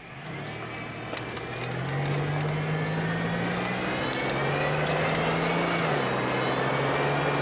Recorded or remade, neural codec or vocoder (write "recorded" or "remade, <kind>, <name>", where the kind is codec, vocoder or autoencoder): recorded